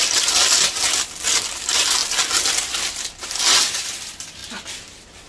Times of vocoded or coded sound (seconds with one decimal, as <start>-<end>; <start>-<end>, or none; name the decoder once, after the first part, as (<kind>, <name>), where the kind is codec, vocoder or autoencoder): none